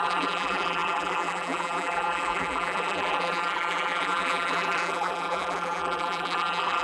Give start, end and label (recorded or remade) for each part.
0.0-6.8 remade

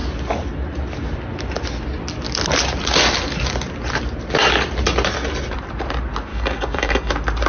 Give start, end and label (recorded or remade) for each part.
0.0-6.3 recorded; 6.3-7.1 remade; 7.1-7.5 recorded

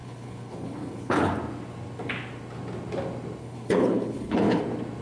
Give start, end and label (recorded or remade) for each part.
0.0-1.3 remade; 1.3-3.4 recorded; 3.4-4.6 remade; 4.6-5.0 recorded

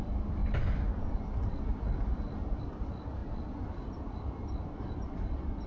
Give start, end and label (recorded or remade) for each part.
0.0-0.4 remade; 0.4-2.6 recorded; 2.6-5.7 remade

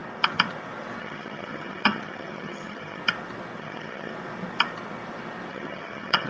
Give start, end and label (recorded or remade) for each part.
0.0-1.0 recorded; 1.0-3.0 remade; 3.0-3.6 recorded; 3.6-4.1 remade; 4.1-5.5 recorded; 5.5-6.3 remade

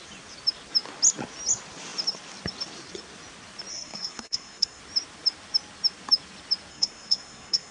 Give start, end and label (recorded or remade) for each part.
0.0-3.7 recorded; 3.7-4.8 remade; 4.8-6.7 recorded; 6.7-7.7 remade

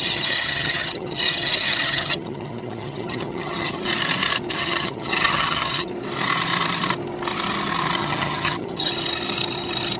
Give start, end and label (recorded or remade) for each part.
0.0-3.9 remade; 3.9-4.5 recorded; 4.5-5.9 remade; 5.9-8.0 recorded; 8.0-8.9 remade; 8.9-10.0 recorded